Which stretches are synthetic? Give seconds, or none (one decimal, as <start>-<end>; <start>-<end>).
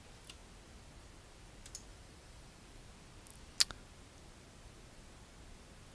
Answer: 1.9-2.8